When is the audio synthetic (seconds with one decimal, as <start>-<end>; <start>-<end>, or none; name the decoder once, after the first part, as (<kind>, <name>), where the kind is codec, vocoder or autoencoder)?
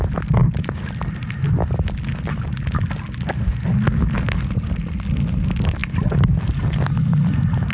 0.4-1.2 (vocoder, BigVGAN v2)